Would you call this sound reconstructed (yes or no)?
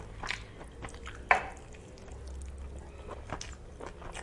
no